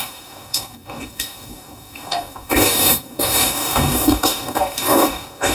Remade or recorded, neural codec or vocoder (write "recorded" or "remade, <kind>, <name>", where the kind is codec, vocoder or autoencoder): remade, codec, DAC